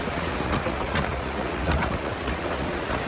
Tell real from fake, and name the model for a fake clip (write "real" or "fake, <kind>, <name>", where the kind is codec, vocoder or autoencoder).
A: fake, vocoder, Vocos